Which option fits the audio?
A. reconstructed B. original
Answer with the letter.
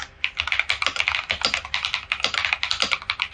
B